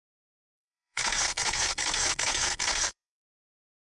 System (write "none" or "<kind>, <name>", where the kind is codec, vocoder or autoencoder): codec, SNAC